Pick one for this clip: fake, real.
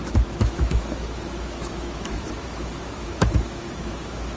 fake